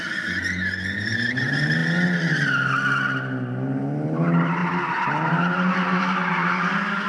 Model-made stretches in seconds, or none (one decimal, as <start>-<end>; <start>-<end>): 4.6-6.3